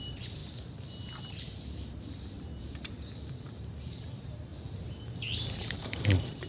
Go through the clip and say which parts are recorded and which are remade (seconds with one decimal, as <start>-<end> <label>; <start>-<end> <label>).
0.0-6.5 remade